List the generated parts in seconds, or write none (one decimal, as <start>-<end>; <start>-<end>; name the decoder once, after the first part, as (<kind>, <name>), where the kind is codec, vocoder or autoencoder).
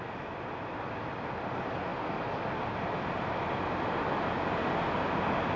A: none